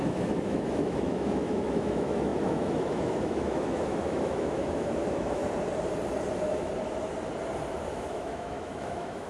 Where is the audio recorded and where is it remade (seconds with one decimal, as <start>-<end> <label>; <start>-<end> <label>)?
0.0-5.4 remade; 5.4-7.9 recorded; 7.9-9.3 remade